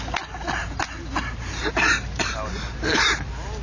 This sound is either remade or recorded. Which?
recorded